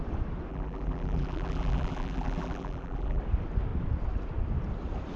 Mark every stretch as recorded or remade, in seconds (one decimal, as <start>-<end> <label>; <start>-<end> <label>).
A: 0.0-0.5 recorded; 0.5-3.2 remade; 3.2-5.2 recorded